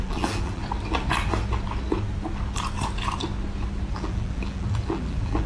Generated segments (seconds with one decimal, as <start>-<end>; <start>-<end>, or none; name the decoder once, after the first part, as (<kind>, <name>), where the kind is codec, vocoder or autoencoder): 0.0-0.6 (vocoder, BigVGAN v2); 3.9-5.5